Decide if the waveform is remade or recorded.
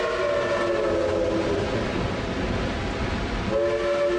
recorded